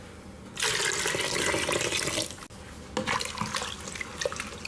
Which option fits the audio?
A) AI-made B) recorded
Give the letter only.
B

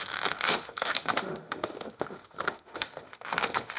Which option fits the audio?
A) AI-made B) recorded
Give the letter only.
A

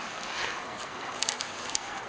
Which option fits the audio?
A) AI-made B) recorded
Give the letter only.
A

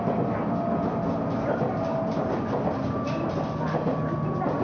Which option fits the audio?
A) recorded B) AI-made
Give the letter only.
A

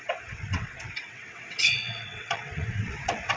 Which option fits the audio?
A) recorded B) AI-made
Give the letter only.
B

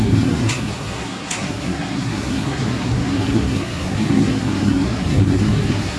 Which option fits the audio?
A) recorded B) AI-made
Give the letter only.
B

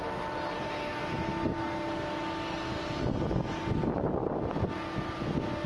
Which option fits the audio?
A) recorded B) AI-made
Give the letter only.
A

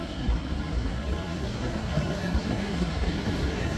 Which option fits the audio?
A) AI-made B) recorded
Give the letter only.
A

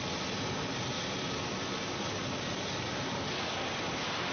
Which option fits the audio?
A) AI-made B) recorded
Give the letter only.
B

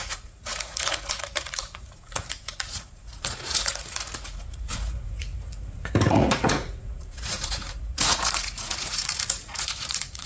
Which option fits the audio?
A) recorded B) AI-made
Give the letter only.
B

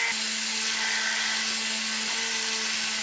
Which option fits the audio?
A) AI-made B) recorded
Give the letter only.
B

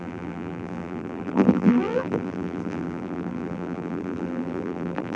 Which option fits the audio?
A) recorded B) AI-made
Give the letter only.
B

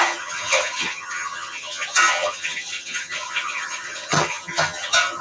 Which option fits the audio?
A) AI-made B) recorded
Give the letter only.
A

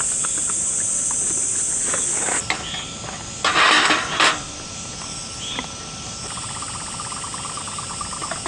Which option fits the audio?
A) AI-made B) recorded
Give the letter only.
B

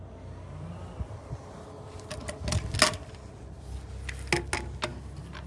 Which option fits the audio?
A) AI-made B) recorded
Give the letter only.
B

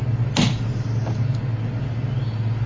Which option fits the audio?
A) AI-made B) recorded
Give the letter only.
B